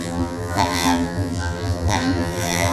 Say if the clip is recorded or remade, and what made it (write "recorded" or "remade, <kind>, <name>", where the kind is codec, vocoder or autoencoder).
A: remade, vocoder, BigVGAN v2